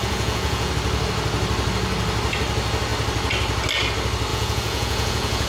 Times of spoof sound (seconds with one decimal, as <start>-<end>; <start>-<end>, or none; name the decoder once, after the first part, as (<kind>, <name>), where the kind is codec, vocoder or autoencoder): 0.0-0.7 (vocoder, Vocos); 4.3-5.5